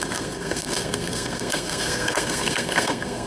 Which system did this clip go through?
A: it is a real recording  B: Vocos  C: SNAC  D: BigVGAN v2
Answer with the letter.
C